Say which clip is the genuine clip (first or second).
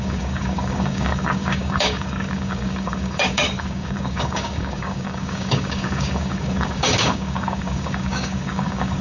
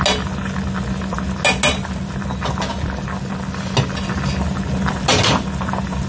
second